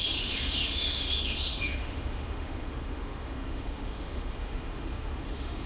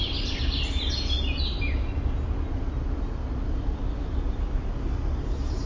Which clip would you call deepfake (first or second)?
first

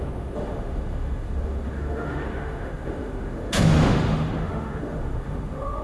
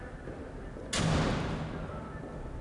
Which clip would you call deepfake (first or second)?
first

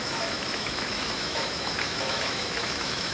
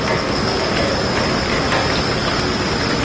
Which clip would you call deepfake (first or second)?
first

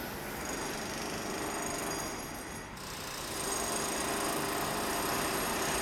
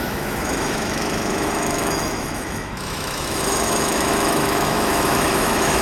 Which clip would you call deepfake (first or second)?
second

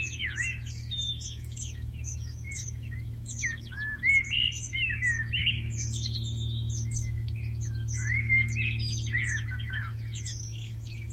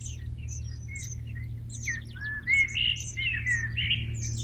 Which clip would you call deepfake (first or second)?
first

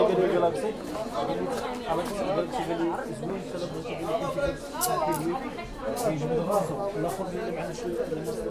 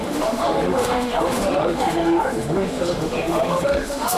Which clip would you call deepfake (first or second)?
second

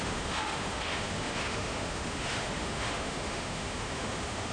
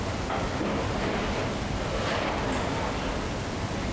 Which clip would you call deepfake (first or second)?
first